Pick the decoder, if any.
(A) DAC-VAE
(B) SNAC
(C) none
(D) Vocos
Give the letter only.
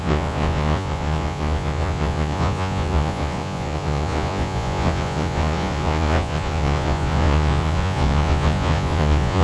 D